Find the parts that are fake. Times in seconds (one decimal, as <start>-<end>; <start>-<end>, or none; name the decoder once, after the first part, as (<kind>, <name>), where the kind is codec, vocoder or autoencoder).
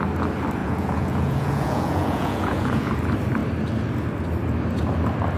0.6-2.9 (vocoder, Vocos)